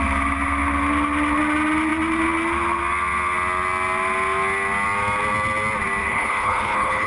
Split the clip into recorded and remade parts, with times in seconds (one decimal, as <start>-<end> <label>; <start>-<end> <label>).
0.0-6.0 recorded; 6.0-7.1 remade

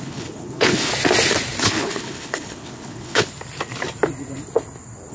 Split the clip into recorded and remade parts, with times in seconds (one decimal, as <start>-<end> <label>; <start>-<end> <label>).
0.0-0.9 remade; 0.9-1.6 recorded; 1.6-3.3 remade; 3.3-5.1 recorded

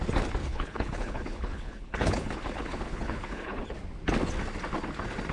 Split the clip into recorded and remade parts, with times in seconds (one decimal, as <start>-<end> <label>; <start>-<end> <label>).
0.0-0.4 recorded; 0.4-3.6 remade; 3.6-5.3 recorded

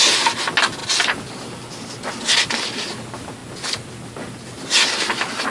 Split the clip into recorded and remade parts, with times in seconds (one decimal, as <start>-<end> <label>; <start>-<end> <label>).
0.0-5.5 recorded

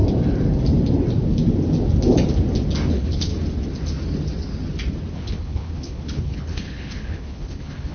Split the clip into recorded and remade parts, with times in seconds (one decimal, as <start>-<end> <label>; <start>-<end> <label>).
0.0-2.9 recorded; 2.9-3.3 remade; 3.3-5.1 recorded; 5.1-7.9 remade

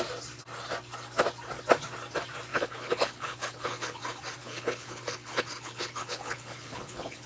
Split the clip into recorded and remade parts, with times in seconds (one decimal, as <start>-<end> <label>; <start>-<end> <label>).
0.0-2.5 recorded; 2.5-4.0 remade; 4.0-4.4 recorded; 4.4-7.3 remade

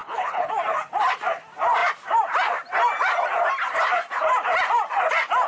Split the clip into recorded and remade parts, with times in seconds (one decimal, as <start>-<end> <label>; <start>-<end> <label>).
0.0-0.5 remade; 0.5-5.5 recorded